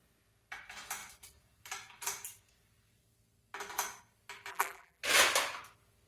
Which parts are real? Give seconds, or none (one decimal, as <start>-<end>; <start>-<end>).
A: 0.0-4.5; 5.0-6.1